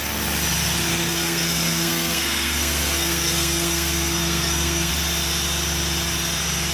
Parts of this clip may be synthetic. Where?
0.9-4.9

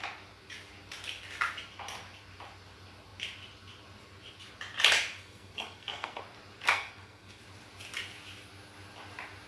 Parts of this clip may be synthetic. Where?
5.2-6.2; 6.7-7.4